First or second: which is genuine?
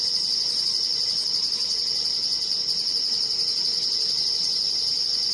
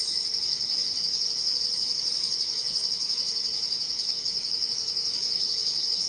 first